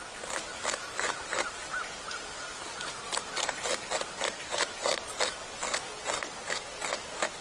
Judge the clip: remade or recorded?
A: recorded